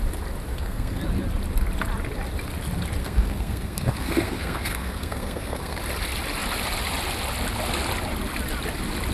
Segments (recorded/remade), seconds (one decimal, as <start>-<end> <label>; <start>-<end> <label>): 0.0-0.5 recorded; 0.5-1.0 remade; 1.0-3.0 recorded; 3.0-5.8 remade; 5.8-9.1 recorded